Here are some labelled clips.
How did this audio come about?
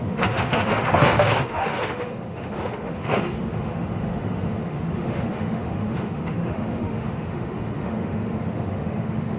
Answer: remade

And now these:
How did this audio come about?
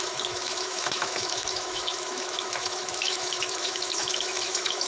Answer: remade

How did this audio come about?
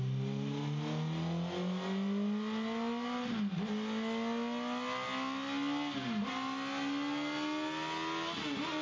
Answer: recorded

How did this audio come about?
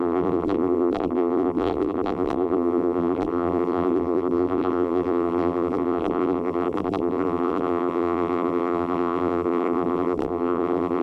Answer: remade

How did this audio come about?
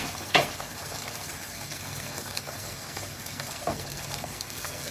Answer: remade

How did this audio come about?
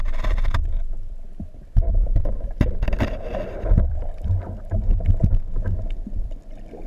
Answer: remade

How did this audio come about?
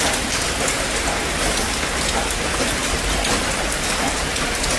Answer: recorded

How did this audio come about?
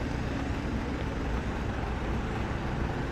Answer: recorded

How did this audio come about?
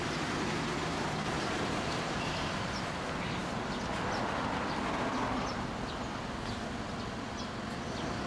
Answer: recorded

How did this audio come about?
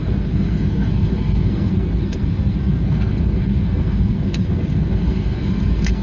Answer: remade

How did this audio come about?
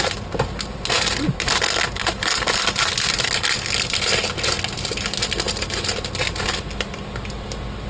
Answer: recorded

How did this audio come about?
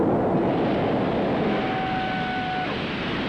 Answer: recorded